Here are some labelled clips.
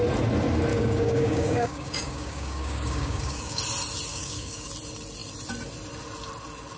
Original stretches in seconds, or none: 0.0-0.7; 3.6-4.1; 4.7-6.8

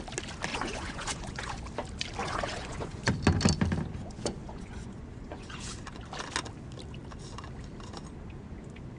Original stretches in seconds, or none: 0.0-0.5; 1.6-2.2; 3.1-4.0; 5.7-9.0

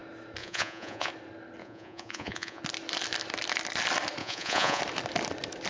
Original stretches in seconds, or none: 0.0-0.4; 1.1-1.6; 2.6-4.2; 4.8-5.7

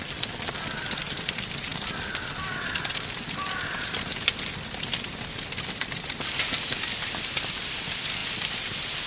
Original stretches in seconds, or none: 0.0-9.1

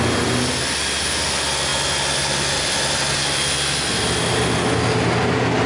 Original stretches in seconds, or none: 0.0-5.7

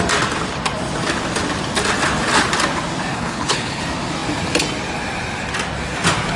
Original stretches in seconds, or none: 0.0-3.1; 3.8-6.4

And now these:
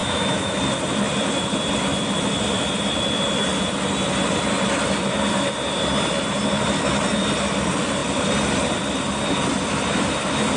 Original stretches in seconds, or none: 0.6-10.6